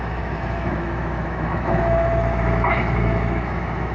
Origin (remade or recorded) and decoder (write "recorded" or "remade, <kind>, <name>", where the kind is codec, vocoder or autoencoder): remade, autoencoder, DAC-VAE